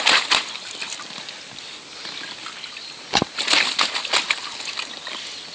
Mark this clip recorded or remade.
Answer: recorded